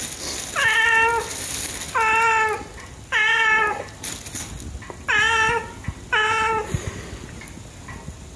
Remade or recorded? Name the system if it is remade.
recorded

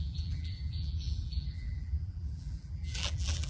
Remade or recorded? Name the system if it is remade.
remade, vocoder, BigVGAN v2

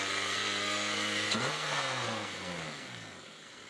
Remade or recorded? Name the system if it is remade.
remade, codec, SNAC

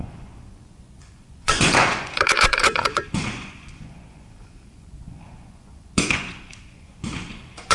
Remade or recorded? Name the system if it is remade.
remade, vocoder, Vocos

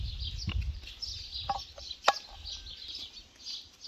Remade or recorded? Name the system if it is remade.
recorded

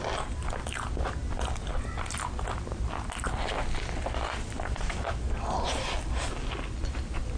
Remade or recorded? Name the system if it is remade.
recorded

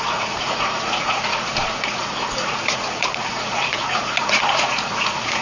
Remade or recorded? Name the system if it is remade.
remade, vocoder, Vocos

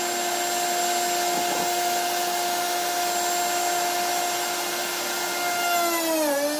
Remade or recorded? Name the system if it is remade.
recorded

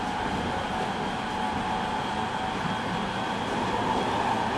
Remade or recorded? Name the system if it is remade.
recorded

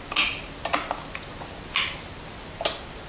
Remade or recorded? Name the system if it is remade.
recorded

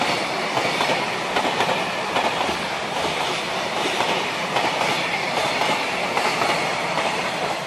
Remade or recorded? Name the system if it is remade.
remade, vocoder, BigVGAN v2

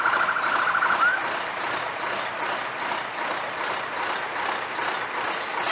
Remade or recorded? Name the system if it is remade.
recorded